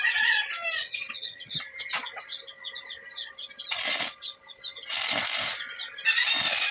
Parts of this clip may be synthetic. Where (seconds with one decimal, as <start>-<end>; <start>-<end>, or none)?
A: 0.8-1.6